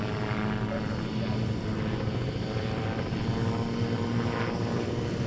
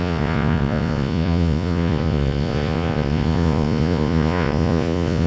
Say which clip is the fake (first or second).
second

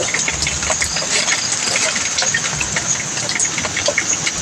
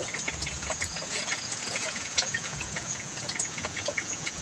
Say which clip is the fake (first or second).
second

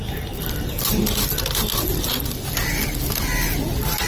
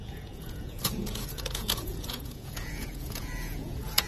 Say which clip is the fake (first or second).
second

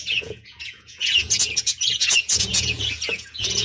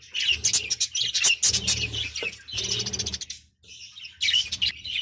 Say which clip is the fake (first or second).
first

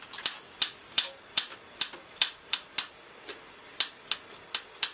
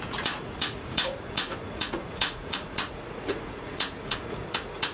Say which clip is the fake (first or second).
second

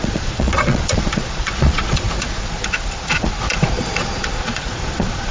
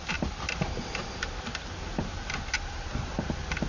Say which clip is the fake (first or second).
first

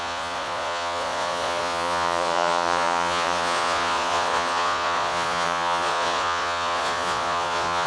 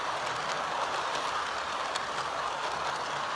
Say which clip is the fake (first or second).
first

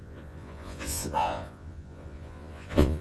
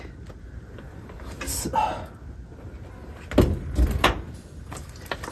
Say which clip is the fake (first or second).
first